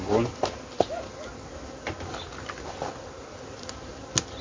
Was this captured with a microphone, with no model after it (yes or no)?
yes